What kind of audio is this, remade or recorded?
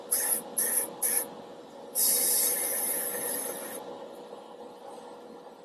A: recorded